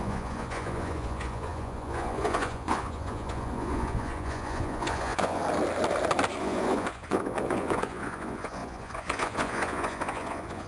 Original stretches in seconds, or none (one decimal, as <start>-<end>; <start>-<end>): 5.4-6.4